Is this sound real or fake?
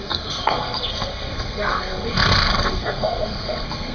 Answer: fake